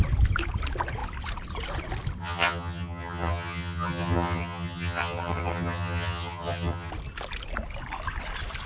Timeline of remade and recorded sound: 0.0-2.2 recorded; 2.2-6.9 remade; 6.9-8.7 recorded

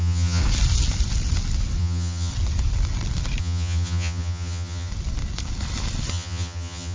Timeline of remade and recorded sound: 0.0-0.4 remade; 0.4-1.8 recorded; 1.8-2.3 remade; 2.3-3.4 recorded; 3.4-4.9 remade; 4.9-6.1 recorded; 6.1-6.9 remade

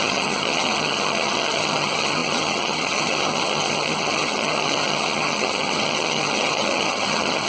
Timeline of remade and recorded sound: 0.0-7.5 remade

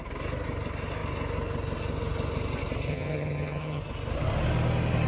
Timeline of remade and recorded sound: 0.0-2.9 recorded; 2.9-3.8 remade; 3.8-5.1 recorded

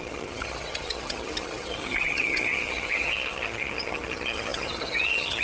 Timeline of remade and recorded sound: 0.0-5.4 remade

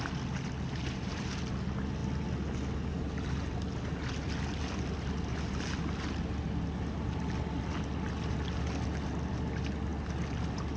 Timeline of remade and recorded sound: 0.0-10.8 recorded

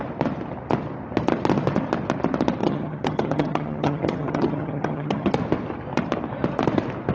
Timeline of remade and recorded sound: 0.0-2.6 recorded; 2.6-5.3 remade; 5.3-7.1 recorded

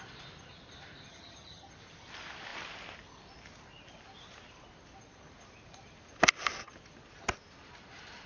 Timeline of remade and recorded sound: 0.0-1.1 recorded; 1.1-1.7 remade; 1.7-8.3 recorded